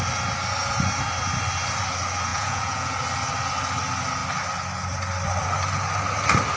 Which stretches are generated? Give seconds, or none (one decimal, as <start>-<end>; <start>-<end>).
2.3-3.0